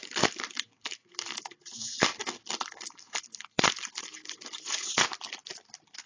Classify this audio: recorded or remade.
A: remade